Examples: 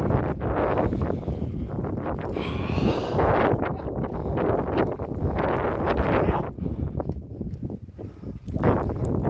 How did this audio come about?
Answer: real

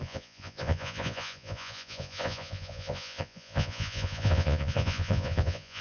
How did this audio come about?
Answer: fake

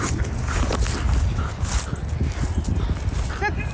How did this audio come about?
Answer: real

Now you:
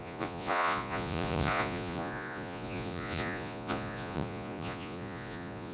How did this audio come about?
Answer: fake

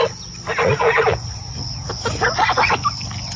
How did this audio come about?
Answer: real